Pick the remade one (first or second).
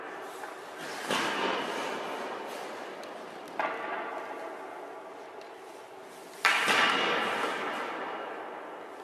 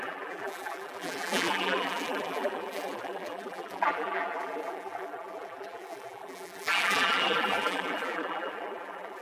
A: second